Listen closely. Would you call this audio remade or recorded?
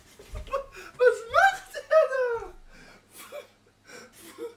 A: recorded